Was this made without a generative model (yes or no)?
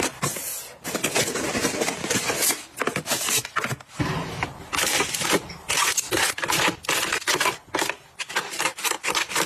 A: yes